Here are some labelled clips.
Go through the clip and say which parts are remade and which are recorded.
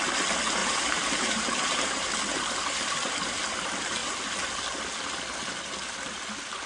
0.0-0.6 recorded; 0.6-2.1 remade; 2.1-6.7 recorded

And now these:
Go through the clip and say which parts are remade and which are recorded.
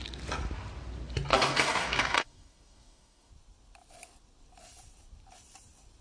0.0-1.3 recorded; 1.3-3.3 remade; 3.3-6.0 recorded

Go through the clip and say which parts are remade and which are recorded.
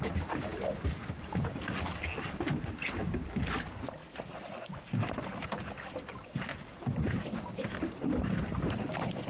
0.0-9.3 recorded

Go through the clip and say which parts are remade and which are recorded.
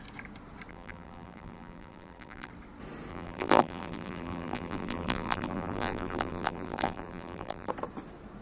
0.0-0.7 recorded; 0.7-2.5 remade; 2.5-3.1 recorded; 3.1-7.7 remade; 7.7-8.4 recorded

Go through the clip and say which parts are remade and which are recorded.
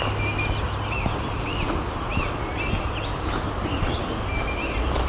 0.0-5.1 recorded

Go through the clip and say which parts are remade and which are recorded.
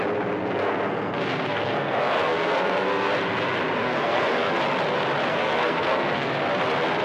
0.0-0.4 recorded; 0.4-3.1 remade; 3.1-3.8 recorded; 3.8-4.6 remade; 4.6-5.3 recorded; 5.3-6.4 remade; 6.4-7.0 recorded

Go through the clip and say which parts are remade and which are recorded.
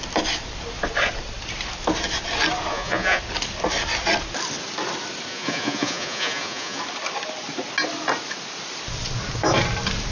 0.0-2.7 recorded; 2.7-3.2 remade; 3.2-5.3 recorded; 5.3-6.8 remade; 6.8-10.1 recorded